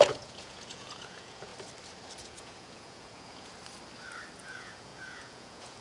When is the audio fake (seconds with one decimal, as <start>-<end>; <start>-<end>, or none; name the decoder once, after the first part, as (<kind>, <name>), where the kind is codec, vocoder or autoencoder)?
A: 0.0-1.5 (vocoder, Vocos); 2.2-3.5; 4.4-5.8